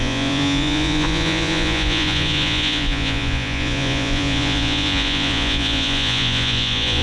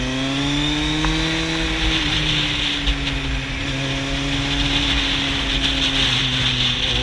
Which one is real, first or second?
second